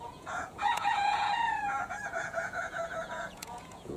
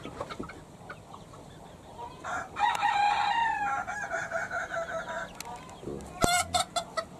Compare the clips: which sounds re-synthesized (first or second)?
first